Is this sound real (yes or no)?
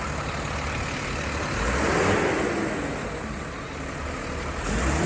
yes